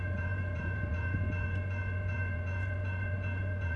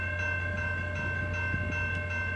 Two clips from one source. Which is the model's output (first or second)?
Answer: first